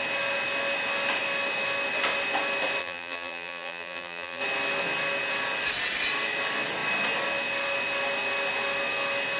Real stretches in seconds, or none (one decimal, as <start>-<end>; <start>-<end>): 0.0-2.8; 4.4-9.4

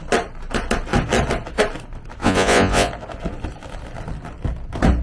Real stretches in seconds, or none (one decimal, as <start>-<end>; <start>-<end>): 0.0-2.2; 2.9-5.0

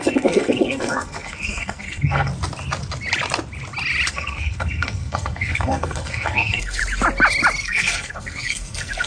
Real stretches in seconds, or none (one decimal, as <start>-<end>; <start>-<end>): 2.3-4.1; 6.8-7.6

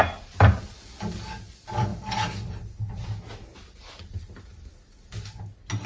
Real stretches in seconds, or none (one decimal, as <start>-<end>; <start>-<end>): 0.0-5.9